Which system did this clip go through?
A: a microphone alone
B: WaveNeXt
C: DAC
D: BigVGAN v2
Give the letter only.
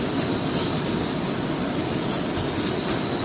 A